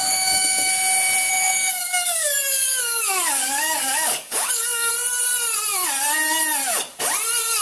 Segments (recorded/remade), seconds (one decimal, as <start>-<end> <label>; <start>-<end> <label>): 0.0-0.7 remade; 0.7-1.3 recorded; 1.3-4.9 remade; 4.9-7.6 recorded